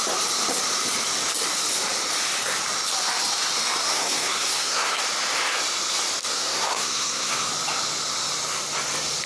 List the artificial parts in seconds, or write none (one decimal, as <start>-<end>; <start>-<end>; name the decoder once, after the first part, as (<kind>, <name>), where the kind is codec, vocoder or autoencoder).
3.8-5.0 (codec, SNAC); 6.3-7.5